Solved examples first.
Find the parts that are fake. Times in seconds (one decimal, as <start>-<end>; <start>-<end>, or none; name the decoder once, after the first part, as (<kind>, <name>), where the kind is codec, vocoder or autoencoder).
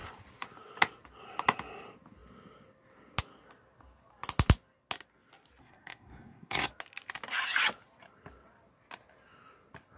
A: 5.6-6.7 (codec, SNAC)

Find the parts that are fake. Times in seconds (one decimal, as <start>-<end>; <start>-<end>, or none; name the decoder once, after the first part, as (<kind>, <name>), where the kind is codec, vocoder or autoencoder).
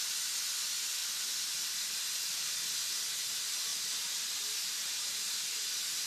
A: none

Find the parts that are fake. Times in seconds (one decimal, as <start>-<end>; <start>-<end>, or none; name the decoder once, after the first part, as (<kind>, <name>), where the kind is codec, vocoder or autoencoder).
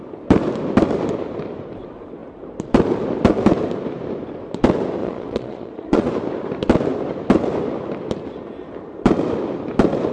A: 5.0-6.1 (vocoder, Vocos)